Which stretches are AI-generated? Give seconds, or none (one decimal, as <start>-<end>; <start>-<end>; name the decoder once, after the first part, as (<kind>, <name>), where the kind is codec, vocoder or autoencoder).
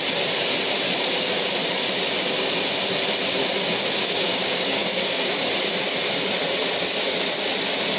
4.3-5.5 (codec, DAC)